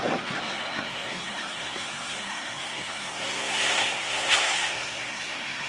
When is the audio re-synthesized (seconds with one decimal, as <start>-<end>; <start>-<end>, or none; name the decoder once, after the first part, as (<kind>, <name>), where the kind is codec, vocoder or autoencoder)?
0.0-5.7 (codec, SNAC)